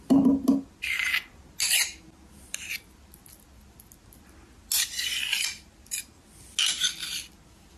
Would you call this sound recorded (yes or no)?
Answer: yes